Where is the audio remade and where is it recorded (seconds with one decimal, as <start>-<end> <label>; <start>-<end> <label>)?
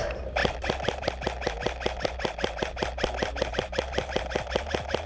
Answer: 0.0-5.1 recorded